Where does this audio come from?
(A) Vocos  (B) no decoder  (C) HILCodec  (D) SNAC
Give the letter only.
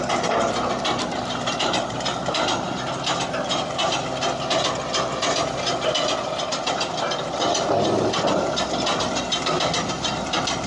B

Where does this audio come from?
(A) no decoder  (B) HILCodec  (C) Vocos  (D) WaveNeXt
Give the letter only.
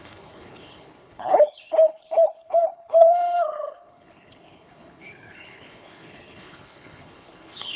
B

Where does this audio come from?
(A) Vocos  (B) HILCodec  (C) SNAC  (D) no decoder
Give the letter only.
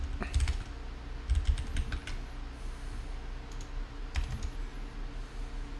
D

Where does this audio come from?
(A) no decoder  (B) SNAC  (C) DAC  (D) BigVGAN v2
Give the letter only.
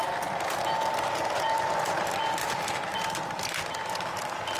A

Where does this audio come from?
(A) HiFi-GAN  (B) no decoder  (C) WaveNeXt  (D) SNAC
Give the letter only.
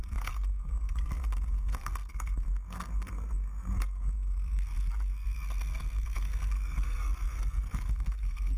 D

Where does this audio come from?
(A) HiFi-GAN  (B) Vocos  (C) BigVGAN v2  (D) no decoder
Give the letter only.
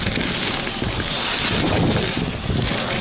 D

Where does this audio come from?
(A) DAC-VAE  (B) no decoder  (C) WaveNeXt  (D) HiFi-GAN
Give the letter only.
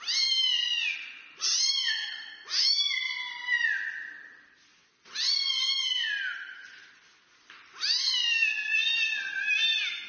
B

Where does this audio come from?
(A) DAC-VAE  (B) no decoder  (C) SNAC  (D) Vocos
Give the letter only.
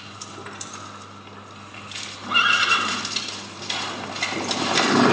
B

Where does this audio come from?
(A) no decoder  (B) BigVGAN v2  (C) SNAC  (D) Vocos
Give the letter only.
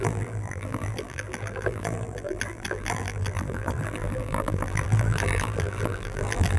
B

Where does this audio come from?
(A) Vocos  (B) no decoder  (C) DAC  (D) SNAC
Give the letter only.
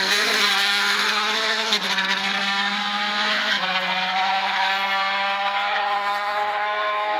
D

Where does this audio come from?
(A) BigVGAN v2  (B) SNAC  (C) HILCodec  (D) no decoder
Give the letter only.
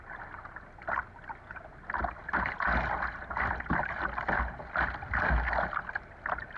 D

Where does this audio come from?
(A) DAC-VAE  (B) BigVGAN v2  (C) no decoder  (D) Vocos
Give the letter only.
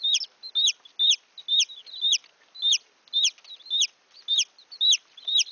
C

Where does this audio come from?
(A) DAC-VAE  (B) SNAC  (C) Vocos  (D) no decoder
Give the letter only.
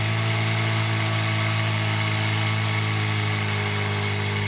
D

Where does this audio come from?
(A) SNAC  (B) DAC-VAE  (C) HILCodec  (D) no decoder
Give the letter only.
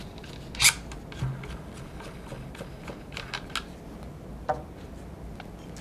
D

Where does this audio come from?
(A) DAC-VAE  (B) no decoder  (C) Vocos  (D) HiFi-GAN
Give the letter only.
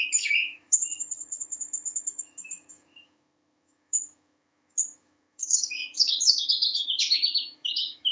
A